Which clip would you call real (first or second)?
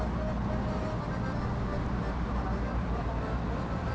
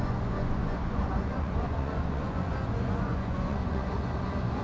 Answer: first